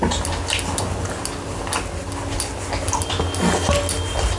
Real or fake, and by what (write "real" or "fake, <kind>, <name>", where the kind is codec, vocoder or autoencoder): real